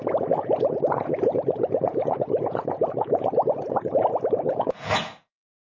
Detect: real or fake fake